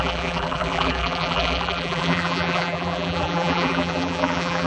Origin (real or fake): fake